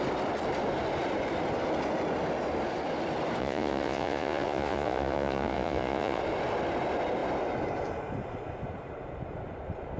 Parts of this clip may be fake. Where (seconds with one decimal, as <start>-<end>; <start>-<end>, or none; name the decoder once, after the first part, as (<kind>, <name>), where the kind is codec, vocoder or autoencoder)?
3.4-6.2 (vocoder, Vocos)